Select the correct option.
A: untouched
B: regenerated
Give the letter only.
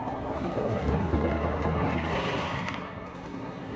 B